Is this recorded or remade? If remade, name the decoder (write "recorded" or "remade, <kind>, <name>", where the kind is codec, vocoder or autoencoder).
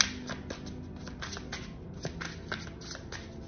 recorded